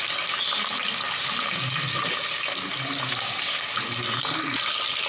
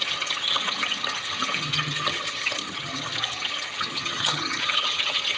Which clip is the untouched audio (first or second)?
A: first